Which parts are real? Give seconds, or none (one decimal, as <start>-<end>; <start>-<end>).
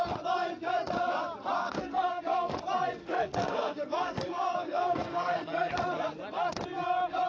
0.0-1.6; 2.2-3.0; 5.7-7.3